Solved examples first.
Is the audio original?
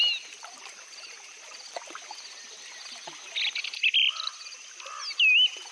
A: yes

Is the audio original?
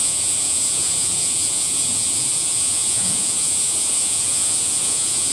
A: no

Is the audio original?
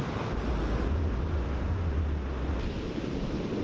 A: yes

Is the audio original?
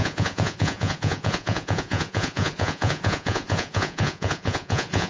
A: no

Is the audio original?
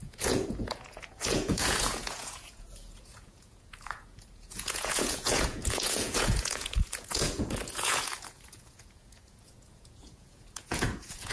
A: no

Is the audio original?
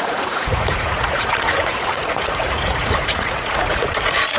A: no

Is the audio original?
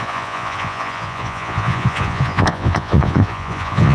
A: no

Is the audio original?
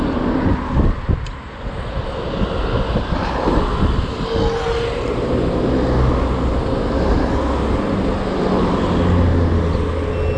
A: yes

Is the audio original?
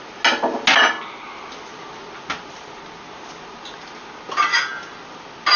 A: yes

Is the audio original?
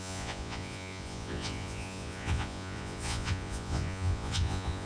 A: no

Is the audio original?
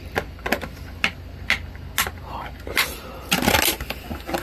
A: yes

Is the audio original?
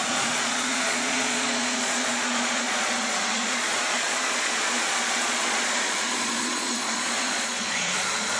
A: no